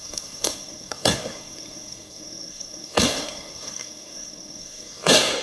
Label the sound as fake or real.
fake